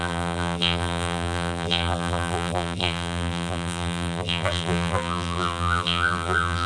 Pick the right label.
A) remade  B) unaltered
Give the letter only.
A